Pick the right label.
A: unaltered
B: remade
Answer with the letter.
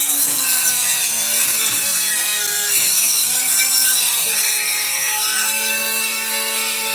B